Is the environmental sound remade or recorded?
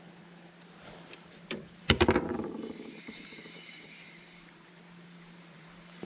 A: remade